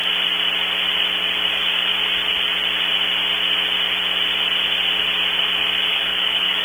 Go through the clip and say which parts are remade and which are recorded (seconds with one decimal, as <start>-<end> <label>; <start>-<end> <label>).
0.0-1.5 recorded; 1.5-1.9 remade; 1.9-5.9 recorded; 5.9-6.6 remade